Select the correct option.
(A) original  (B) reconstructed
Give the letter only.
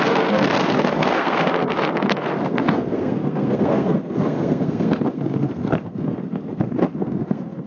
B